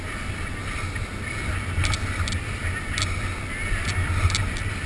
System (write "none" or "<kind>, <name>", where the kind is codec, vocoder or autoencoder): none